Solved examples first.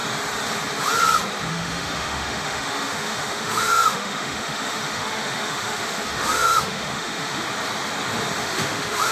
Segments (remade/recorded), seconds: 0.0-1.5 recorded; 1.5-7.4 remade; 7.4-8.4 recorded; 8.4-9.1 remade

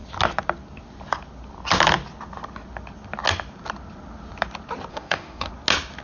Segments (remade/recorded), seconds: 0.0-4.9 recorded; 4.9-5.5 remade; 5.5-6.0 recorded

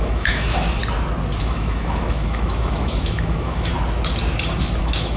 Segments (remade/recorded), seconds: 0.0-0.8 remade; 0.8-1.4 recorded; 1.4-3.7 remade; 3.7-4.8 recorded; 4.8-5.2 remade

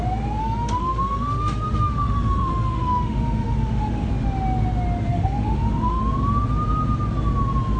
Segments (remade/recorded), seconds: 0.0-0.4 recorded; 0.4-4.1 remade; 4.1-5.1 recorded; 5.1-6.0 remade; 6.0-7.8 recorded

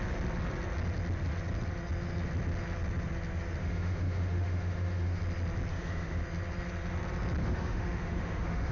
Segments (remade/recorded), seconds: 0.0-3.6 recorded; 3.6-5.2 remade; 5.2-5.7 recorded; 5.7-6.2 remade; 6.2-7.4 recorded; 7.4-8.7 remade

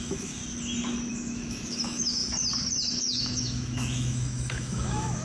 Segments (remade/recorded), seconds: 0.0-0.4 remade; 0.4-1.1 recorded; 1.1-2.2 remade; 2.2-2.9 recorded; 2.9-5.2 remade

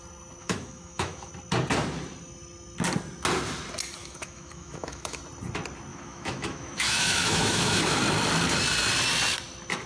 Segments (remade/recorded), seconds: 0.0-0.4 recorded; 0.4-1.3 remade; 1.3-4.0 recorded; 4.0-5.2 remade; 5.2-5.9 recorded; 5.9-8.0 remade; 8.0-9.9 recorded